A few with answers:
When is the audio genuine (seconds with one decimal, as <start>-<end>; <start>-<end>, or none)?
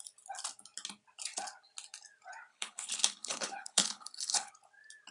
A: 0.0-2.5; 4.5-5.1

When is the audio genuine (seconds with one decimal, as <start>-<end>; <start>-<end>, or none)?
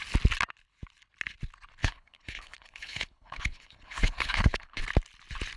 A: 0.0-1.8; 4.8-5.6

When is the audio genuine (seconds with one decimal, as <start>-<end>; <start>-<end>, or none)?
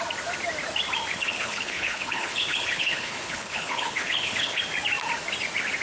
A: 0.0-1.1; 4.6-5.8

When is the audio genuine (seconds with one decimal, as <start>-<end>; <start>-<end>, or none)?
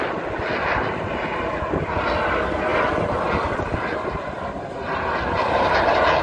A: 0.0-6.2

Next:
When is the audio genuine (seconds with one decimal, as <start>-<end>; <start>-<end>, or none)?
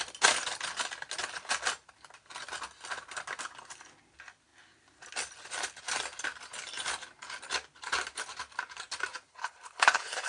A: 0.0-9.3